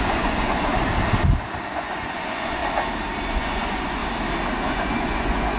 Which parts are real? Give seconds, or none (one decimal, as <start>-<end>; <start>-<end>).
0.7-1.7; 2.6-3.3; 4.0-4.6